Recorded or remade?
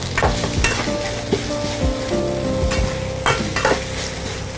recorded